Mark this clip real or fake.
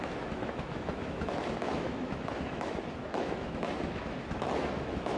fake